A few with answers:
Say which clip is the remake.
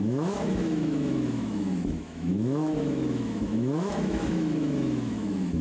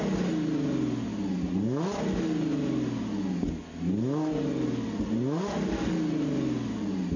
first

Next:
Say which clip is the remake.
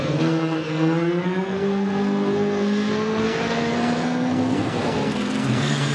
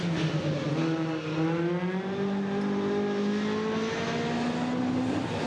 first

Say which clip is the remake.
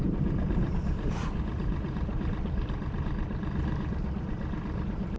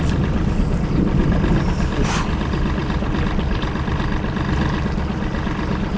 first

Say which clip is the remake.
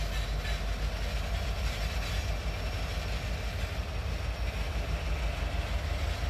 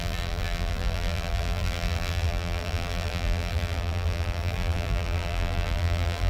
second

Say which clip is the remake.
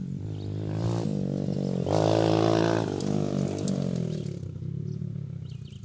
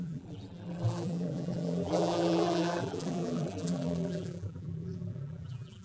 second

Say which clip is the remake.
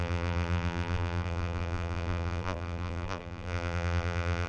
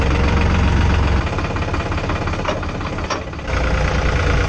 first